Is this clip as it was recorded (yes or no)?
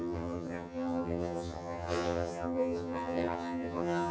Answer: no